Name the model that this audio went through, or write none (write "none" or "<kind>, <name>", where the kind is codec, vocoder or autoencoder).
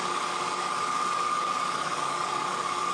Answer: codec, DAC